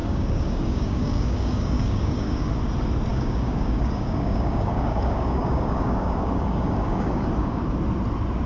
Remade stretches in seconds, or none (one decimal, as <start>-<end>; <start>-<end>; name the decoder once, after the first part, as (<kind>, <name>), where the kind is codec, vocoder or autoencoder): 0.0-2.5 (codec, DAC); 3.1-7.6